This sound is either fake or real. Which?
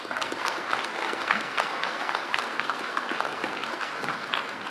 fake